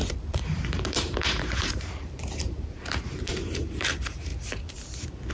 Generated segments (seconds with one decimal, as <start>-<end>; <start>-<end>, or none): 0.0-4.3